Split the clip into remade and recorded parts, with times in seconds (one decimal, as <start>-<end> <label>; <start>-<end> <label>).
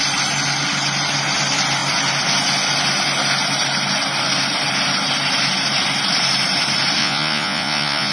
0.0-7.0 recorded; 7.0-8.1 remade